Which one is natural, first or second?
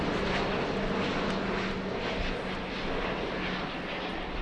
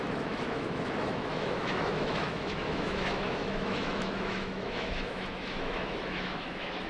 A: first